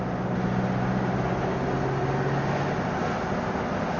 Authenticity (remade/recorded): recorded